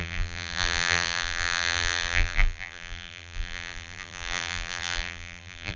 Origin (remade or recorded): remade